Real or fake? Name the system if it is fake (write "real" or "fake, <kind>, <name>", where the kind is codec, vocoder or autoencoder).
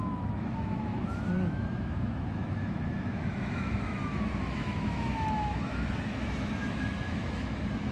fake, autoencoder, DAC-VAE